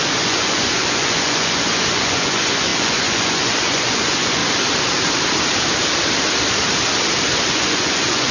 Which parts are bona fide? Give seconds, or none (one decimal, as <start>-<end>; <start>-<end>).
4.4-7.5